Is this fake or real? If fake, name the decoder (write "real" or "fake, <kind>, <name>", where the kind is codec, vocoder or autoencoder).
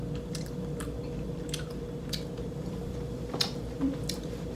fake, vocoder, BigVGAN v2